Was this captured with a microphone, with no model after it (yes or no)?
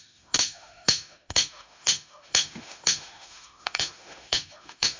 no